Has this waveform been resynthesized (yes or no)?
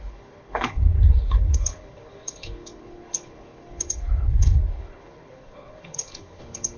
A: yes